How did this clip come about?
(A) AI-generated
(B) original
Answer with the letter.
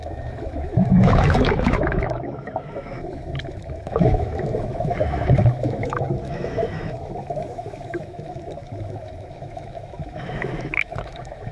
A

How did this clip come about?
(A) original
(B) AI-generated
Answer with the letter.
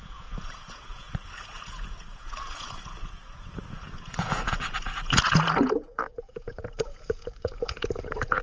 B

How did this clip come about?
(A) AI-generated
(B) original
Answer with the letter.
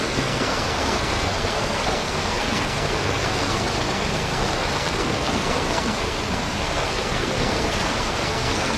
A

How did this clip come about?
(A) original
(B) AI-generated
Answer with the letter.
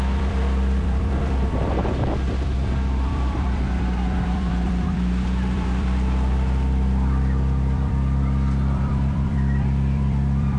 B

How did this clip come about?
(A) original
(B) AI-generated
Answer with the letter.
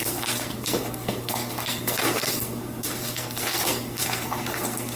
B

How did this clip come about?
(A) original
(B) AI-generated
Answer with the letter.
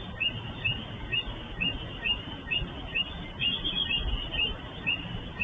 A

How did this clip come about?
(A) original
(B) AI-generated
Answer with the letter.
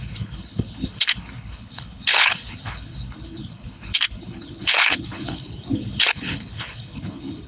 B